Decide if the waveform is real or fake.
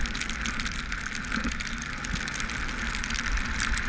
real